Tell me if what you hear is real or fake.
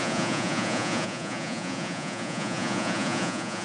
fake